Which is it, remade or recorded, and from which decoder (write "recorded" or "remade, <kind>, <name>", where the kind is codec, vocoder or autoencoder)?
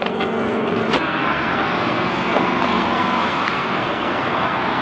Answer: remade, codec, SNAC